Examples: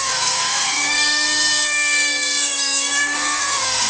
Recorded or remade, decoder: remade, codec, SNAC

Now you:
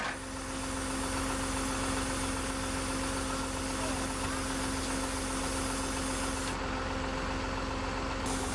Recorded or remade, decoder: recorded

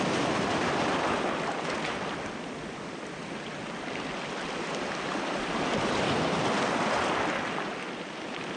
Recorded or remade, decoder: recorded